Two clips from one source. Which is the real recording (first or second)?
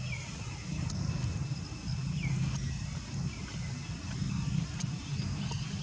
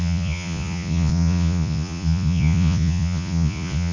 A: first